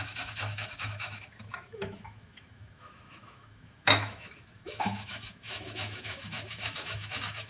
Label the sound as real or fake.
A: fake